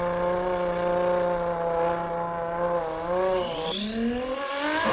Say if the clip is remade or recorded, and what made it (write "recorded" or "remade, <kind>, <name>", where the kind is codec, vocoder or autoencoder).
recorded